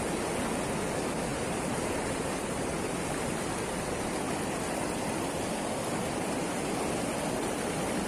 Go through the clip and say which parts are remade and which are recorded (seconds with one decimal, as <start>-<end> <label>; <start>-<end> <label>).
0.0-1.3 recorded; 1.3-3.0 remade; 3.0-8.1 recorded